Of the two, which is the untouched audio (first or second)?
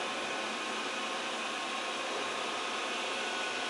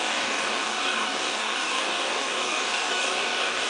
first